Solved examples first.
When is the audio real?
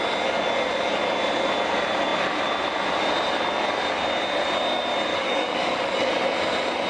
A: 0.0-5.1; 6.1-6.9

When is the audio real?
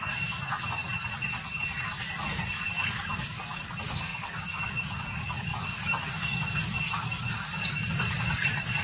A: 0.8-2.0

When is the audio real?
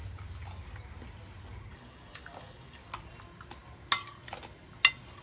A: 0.0-1.7; 2.8-5.2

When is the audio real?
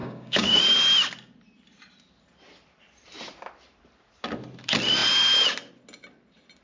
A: 0.6-6.6